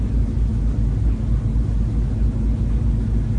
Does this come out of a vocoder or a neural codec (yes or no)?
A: no